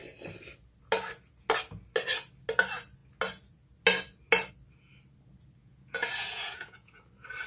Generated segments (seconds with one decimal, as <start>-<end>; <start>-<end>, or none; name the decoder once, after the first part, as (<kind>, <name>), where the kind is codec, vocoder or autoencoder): 5.6-7.0 (vocoder, Vocos)